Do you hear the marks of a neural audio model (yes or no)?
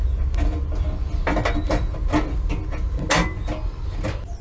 no